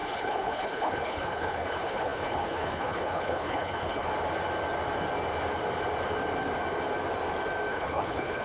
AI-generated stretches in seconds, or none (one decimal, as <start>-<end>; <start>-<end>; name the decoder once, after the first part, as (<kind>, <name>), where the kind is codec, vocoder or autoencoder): 0.0-4.1 (codec, HILCodec); 7.7-8.4